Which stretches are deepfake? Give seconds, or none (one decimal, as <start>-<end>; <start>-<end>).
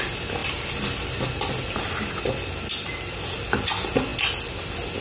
none